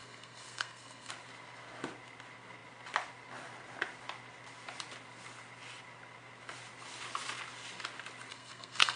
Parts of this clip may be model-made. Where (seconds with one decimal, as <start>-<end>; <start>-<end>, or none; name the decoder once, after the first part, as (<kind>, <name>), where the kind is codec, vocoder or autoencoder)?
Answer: 0.0-1.1 (codec, SNAC); 8.3-9.0